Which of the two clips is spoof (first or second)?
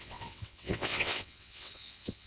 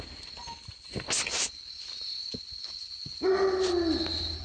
first